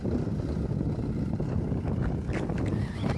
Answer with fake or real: real